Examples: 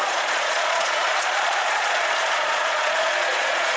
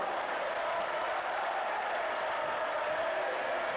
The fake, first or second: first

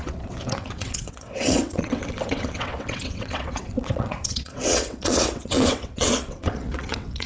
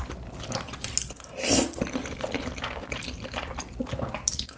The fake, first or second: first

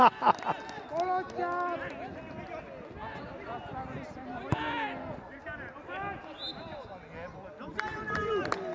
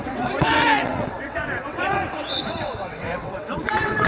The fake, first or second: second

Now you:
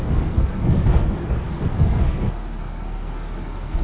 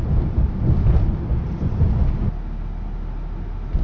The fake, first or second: first